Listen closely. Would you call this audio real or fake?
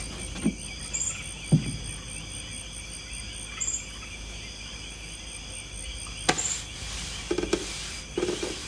real